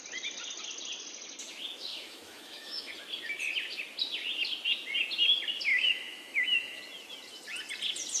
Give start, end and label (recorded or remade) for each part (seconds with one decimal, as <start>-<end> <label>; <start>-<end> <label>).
0.0-1.9 recorded; 1.9-2.9 remade; 2.9-5.7 recorded; 5.7-6.8 remade; 6.8-8.2 recorded